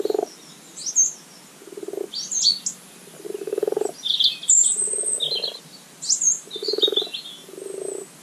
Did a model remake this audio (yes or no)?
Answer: no